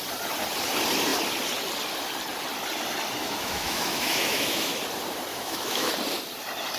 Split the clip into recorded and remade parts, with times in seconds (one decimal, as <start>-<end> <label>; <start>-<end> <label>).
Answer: 0.0-3.2 recorded; 3.2-4.8 remade; 4.8-5.3 recorded; 5.3-5.9 remade; 5.9-6.8 recorded